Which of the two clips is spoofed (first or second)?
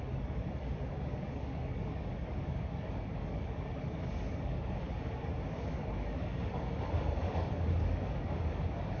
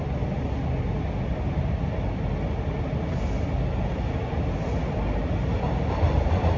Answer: first